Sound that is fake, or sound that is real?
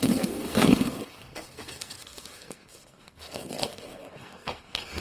fake